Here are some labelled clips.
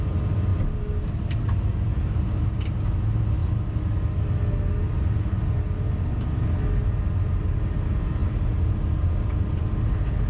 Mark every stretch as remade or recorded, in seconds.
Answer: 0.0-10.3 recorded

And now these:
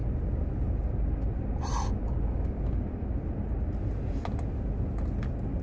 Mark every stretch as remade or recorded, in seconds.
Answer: 0.0-5.6 recorded

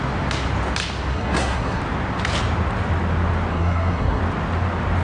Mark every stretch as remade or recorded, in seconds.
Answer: 0.0-1.1 recorded; 1.1-1.8 remade; 1.8-3.5 recorded; 3.5-4.2 remade; 4.2-5.0 recorded

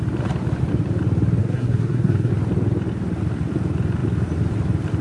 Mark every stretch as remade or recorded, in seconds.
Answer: 0.0-1.4 recorded; 1.4-2.3 remade; 2.3-5.0 recorded

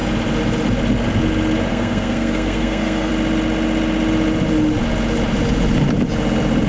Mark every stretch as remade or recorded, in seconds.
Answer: 0.0-1.7 recorded; 1.7-3.1 remade; 3.1-6.7 recorded

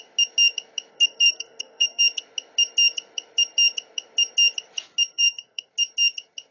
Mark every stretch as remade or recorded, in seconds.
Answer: 0.0-0.9 recorded; 0.9-2.0 remade; 2.0-5.1 recorded; 5.1-5.7 remade; 5.7-6.5 recorded

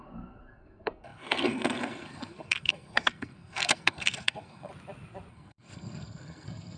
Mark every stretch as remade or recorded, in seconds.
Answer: 0.0-4.7 remade; 4.7-5.3 recorded; 5.3-6.8 remade